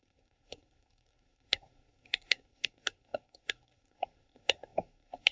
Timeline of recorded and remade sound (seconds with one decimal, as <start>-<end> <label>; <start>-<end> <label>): 0.0-5.3 remade